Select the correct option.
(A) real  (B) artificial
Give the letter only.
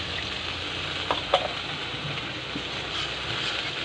A